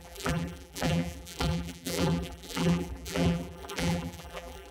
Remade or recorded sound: remade